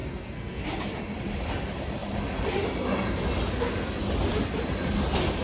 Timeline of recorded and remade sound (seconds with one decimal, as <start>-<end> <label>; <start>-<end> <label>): 0.0-0.6 remade; 0.6-5.4 recorded